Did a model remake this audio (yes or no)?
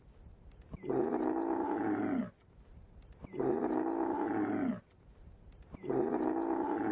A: no